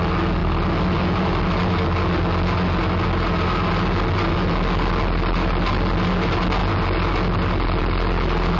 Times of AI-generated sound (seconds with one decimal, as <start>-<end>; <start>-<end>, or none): none